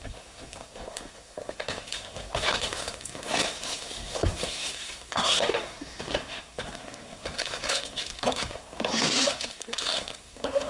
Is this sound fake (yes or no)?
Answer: yes